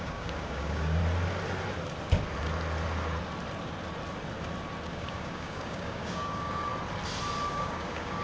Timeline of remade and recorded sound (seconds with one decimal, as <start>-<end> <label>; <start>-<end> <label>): 0.0-1.0 remade; 1.0-4.9 recorded; 4.9-6.7 remade; 6.7-7.5 recorded; 7.5-8.2 remade